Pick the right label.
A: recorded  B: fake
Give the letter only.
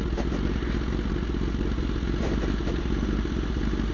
A